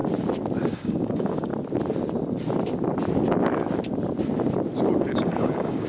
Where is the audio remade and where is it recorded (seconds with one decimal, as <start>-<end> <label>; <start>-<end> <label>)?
0.0-0.7 recorded; 0.7-1.5 remade; 1.5-5.0 recorded; 5.0-5.9 remade